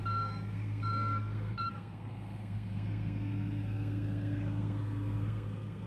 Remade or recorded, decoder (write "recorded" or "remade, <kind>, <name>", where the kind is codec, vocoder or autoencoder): remade, codec, SNAC